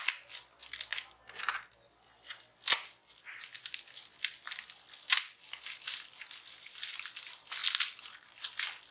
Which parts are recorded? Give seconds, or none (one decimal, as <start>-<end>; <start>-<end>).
0.0-8.9